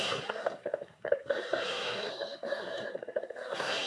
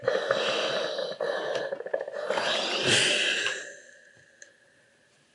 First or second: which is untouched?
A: second